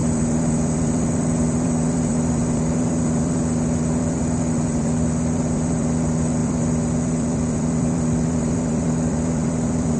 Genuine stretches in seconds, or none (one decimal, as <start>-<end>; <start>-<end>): none